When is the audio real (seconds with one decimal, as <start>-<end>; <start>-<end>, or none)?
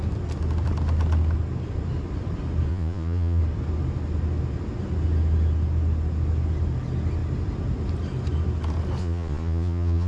0.0-2.7; 3.4-9.0